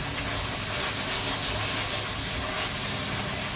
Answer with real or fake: real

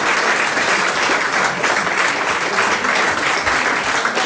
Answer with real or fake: real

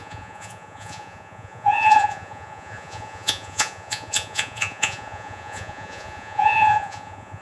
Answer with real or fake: fake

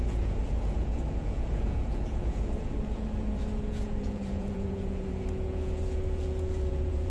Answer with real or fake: fake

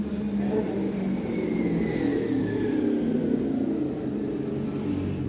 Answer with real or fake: real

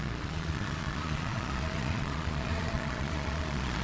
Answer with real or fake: fake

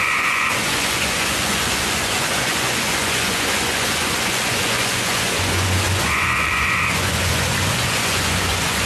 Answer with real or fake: fake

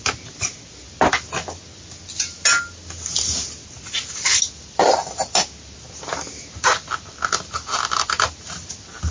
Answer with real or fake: real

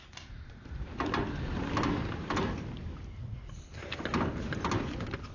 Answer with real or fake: real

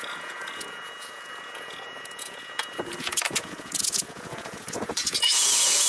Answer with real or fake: fake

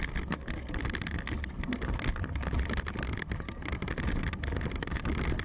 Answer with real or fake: real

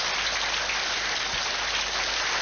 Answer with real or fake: real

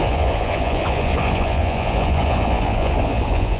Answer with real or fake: fake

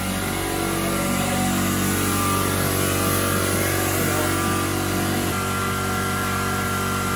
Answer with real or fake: real